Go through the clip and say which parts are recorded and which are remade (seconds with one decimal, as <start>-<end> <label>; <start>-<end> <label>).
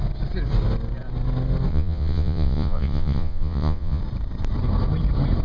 0.0-1.7 recorded; 1.7-4.0 remade; 4.0-5.4 recorded